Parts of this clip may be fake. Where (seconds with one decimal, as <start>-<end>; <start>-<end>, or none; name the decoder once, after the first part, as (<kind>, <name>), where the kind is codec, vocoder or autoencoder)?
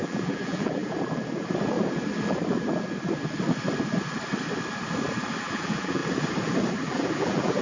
0.0-0.8 (vocoder, BigVGAN v2); 5.4-6.0; 6.7-7.6